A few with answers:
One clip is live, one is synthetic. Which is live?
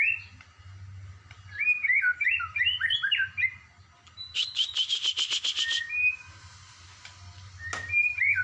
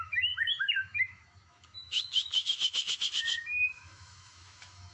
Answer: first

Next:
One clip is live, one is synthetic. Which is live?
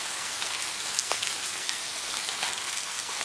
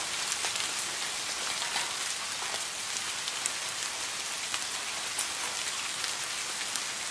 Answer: second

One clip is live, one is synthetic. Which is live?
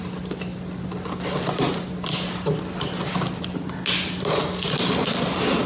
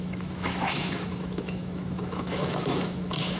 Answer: first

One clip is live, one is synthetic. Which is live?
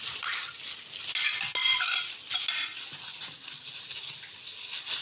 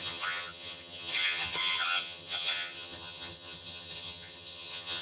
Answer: first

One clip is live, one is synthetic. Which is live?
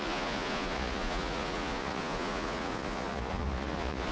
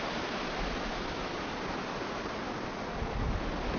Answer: second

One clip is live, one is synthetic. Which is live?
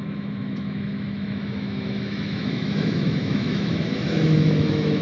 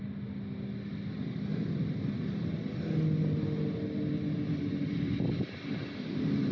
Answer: second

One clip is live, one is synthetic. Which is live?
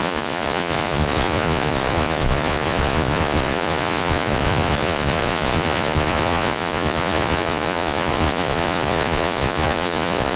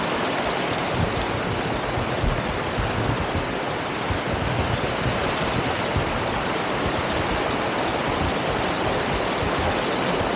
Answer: second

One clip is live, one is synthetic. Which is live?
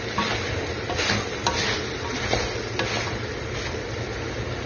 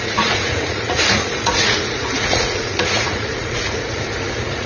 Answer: first